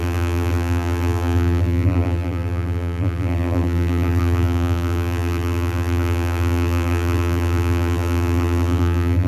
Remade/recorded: remade